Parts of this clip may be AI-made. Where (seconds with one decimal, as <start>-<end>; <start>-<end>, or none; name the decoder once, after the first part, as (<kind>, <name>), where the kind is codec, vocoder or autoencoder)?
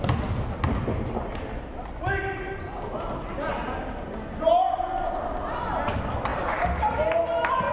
none